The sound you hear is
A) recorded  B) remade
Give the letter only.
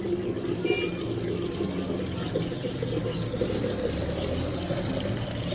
A